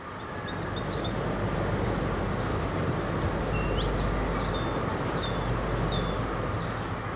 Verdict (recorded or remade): remade